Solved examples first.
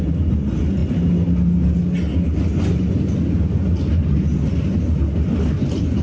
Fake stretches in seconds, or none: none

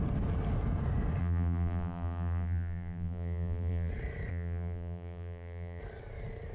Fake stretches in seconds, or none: 1.2-3.9 (vocoder, BigVGAN v2); 4.3-5.8

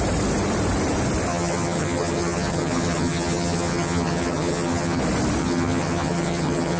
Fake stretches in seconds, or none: 1.3-5.0 (vocoder, HiFi-GAN); 5.4-6.8

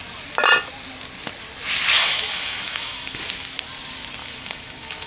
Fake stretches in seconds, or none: 2.0-3.2 (autoencoder, DAC-VAE); 4.2-5.1